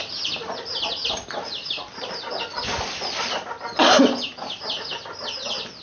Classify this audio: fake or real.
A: real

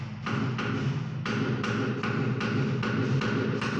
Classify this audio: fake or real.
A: real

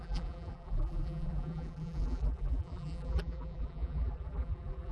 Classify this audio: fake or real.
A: fake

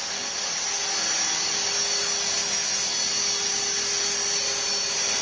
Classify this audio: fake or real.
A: real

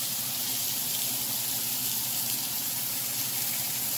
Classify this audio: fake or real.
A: real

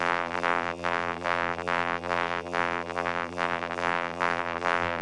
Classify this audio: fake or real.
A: fake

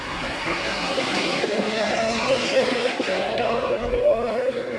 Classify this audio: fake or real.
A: fake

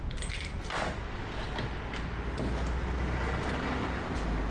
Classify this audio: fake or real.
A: real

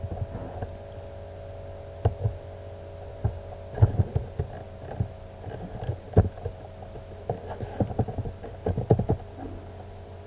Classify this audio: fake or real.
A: real